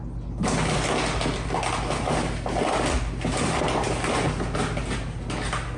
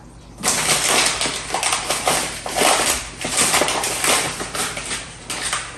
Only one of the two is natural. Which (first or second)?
first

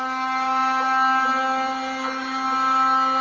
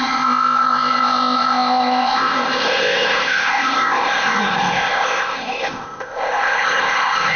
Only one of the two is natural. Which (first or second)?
first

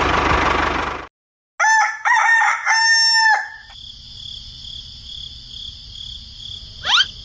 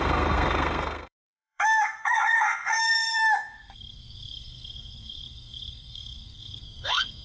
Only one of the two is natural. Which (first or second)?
first